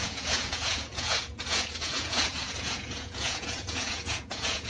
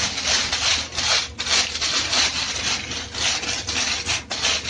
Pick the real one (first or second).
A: second